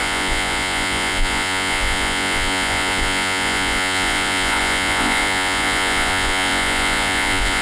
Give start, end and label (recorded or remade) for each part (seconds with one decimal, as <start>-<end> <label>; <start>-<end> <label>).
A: 0.0-7.6 remade

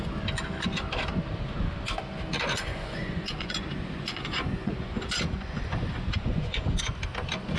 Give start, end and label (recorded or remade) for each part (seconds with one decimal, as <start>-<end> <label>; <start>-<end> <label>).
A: 0.0-2.7 recorded; 2.7-6.8 remade; 6.8-7.6 recorded

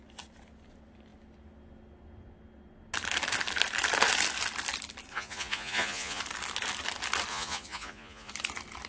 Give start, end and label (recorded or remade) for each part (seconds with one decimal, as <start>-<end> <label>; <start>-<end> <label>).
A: 0.0-5.1 recorded; 5.1-6.2 remade; 6.2-7.3 recorded; 7.3-8.3 remade; 8.3-8.9 recorded

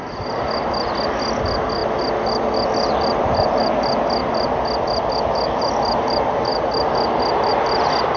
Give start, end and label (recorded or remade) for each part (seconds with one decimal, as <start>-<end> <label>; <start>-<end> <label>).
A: 0.0-8.2 recorded